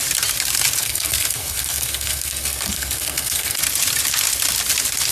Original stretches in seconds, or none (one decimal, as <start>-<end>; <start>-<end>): 0.0-0.8; 3.6-5.1